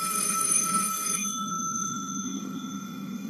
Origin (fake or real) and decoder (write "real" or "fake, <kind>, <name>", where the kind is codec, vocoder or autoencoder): fake, autoencoder, DAC-VAE